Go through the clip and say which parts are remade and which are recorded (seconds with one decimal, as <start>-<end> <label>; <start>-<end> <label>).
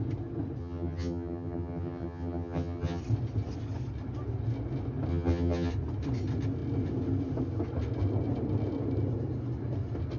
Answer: 0.0-0.6 recorded; 0.6-3.0 remade; 3.0-5.1 recorded; 5.1-5.7 remade; 5.7-10.2 recorded